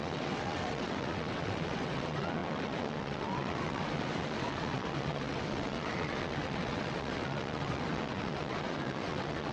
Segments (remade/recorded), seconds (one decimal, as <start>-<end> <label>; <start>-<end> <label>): 0.0-9.5 remade